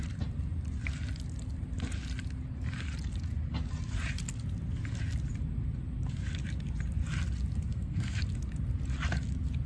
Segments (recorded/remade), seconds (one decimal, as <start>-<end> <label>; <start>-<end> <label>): 0.0-7.7 recorded; 7.7-8.2 remade; 8.2-9.7 recorded